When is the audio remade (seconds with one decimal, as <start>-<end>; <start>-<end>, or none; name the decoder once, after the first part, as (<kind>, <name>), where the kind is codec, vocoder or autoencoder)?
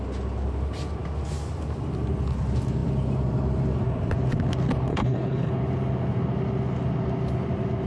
4.9-5.5 (codec, HILCodec)